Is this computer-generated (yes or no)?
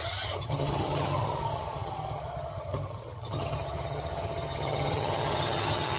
yes